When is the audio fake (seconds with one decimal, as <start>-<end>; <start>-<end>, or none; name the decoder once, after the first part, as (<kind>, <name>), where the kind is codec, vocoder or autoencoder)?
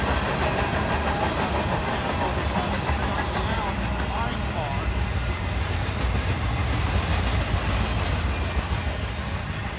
none